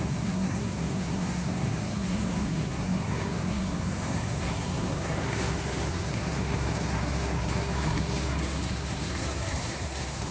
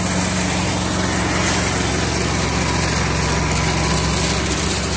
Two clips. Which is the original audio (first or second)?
second